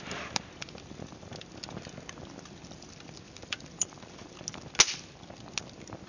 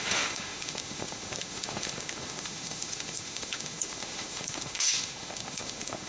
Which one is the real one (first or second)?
first